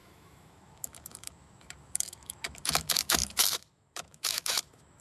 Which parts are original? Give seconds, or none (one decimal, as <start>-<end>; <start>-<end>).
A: none